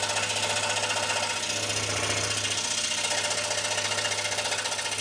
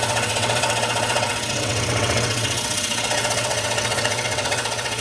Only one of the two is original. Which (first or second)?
first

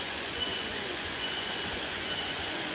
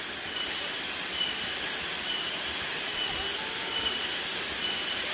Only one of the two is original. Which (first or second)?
second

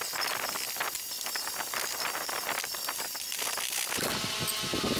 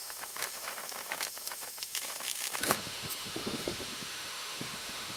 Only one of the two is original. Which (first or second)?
first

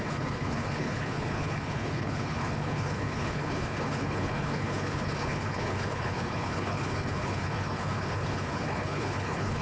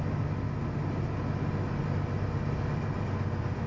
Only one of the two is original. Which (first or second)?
second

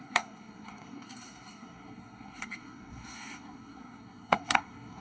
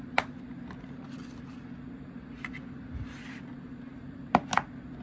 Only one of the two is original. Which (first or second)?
second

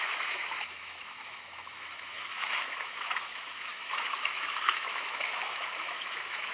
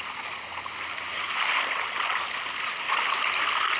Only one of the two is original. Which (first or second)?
second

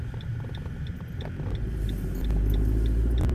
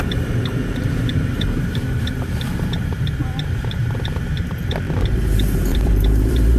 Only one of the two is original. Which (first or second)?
first